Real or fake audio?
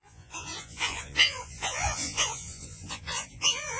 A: fake